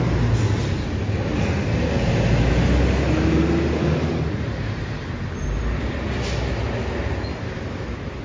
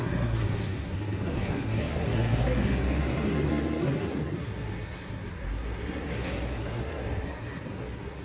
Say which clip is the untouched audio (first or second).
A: first